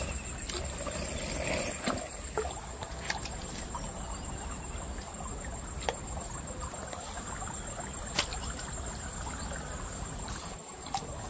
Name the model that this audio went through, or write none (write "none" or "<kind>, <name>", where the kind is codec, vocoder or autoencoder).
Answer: none